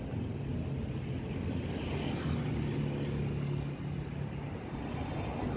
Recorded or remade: recorded